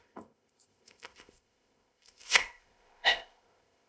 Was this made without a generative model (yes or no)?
no